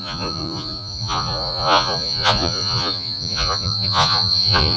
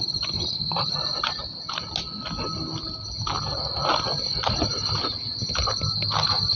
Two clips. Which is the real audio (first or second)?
second